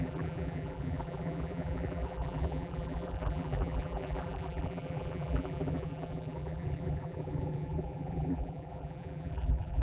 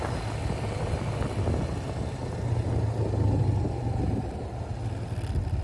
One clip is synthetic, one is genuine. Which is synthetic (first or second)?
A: first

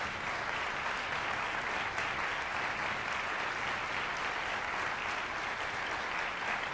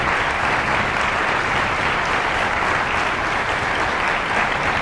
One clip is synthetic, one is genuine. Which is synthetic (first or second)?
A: second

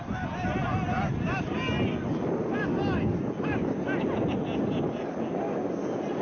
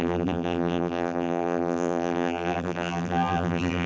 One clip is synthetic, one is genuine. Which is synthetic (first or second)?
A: second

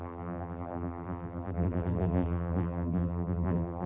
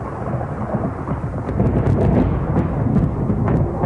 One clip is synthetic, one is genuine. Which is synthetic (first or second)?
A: first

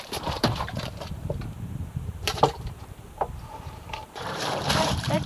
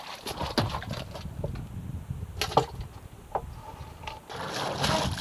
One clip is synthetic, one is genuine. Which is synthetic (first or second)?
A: first